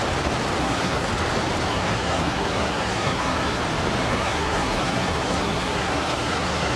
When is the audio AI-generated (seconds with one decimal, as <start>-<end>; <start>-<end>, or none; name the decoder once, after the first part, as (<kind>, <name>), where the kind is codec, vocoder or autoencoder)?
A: 0.6-1.1 (codec, SNAC); 1.7-3.6; 4.0-6.8